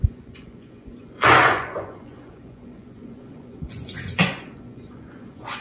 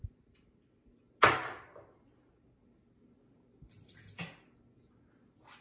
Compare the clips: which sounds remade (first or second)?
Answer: first